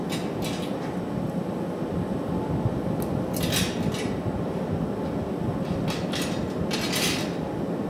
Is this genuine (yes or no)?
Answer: yes